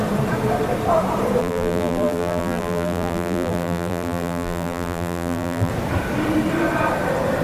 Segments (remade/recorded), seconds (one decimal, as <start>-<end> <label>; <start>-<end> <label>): 0.0-1.4 recorded; 1.4-5.7 remade; 5.7-7.4 recorded